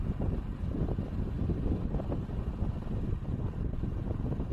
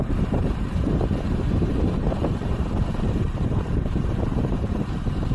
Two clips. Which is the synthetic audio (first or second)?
second